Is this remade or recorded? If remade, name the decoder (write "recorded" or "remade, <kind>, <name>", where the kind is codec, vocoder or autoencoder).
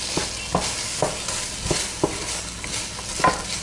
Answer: recorded